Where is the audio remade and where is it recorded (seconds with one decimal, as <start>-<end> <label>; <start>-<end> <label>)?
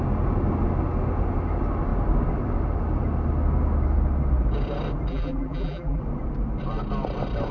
0.0-5.1 recorded; 5.1-6.0 remade; 6.0-7.5 recorded